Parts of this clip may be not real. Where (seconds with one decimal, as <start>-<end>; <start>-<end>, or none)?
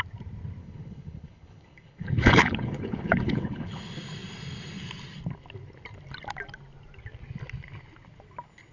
0.6-3.8